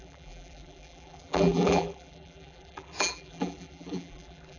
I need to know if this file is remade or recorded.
remade